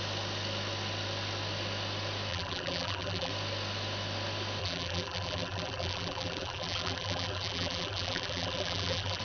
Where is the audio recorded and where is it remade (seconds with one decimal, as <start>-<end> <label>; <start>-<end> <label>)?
0.0-2.3 recorded; 2.3-3.3 remade; 3.3-4.6 recorded; 4.6-9.2 remade